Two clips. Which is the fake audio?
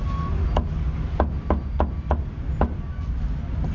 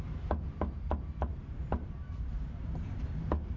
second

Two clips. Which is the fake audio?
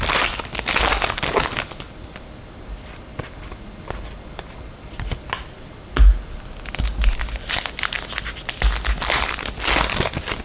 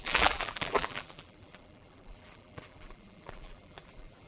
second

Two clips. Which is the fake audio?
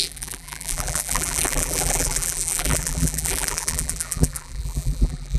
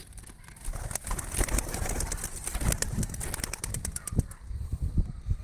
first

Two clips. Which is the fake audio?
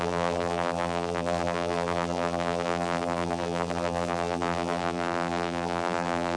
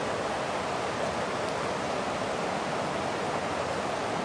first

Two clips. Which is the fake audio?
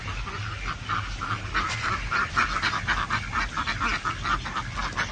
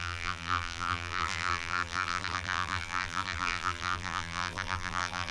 second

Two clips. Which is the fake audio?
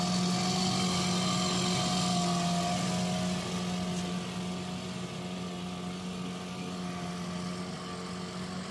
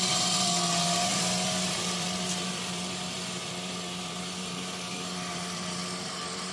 second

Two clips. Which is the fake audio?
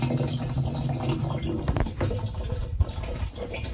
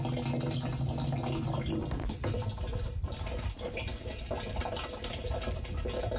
first